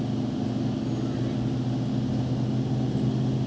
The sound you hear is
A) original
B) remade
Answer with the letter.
A